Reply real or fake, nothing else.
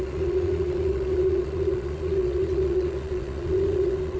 fake